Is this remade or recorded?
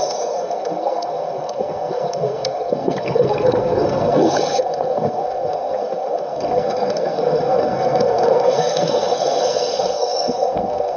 remade